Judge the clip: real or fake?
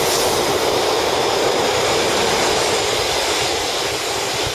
real